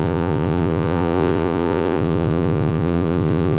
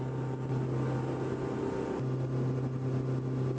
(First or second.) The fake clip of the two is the first